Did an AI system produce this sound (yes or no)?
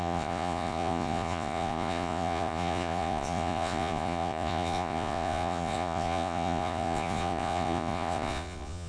yes